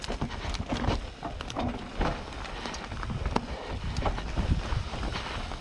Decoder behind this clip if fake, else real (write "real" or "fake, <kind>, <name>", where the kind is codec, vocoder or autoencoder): real